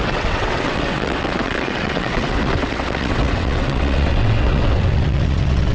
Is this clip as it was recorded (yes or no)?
no